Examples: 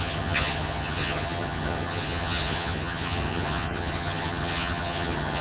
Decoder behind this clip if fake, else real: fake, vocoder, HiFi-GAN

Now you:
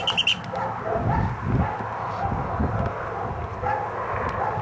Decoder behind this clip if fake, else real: real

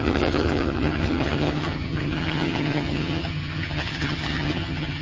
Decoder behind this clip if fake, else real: fake, vocoder, HiFi-GAN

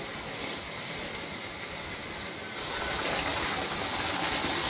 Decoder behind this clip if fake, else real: real